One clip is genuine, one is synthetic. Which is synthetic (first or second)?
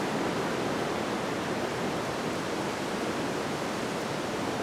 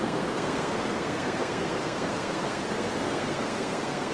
second